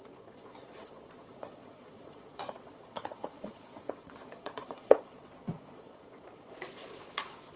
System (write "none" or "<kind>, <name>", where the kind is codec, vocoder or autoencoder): vocoder, Vocos